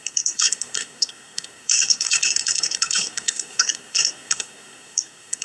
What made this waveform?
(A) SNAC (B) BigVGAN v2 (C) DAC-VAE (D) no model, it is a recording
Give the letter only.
A